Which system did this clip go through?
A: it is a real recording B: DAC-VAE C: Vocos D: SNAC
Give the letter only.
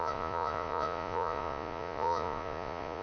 C